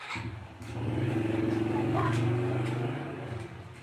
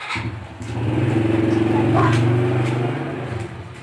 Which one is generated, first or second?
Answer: first